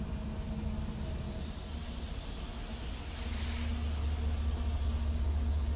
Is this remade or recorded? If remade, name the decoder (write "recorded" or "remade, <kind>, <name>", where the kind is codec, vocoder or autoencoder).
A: recorded